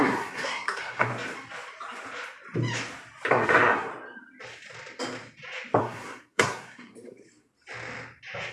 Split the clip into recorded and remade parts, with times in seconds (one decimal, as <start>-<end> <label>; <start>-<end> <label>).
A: 0.0-1.1 remade; 1.1-3.3 recorded; 3.3-3.9 remade; 3.9-5.8 recorded; 5.8-7.5 remade; 7.5-8.5 recorded